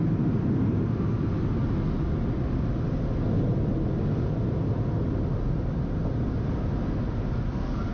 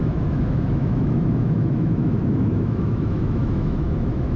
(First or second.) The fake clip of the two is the second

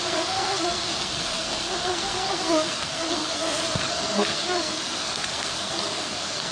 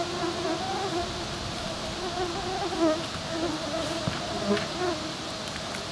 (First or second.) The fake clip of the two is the first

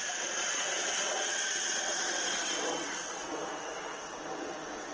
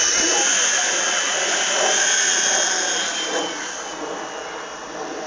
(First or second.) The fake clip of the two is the first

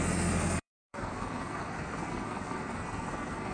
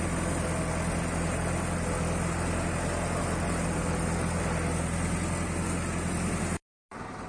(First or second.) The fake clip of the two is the first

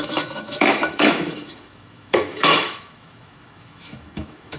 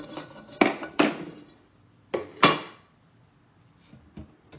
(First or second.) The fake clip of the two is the first